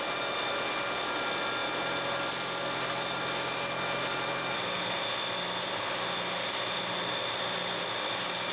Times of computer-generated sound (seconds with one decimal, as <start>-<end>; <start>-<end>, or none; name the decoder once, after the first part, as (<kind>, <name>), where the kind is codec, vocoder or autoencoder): none

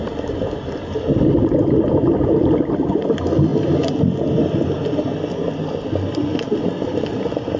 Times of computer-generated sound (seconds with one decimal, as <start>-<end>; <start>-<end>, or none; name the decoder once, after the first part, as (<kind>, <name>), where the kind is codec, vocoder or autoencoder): none

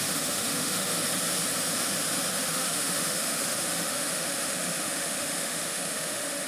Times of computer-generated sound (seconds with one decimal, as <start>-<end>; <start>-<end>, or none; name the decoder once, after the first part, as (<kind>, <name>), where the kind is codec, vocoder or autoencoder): 0.0-0.9 (autoencoder, DAC-VAE); 2.5-6.5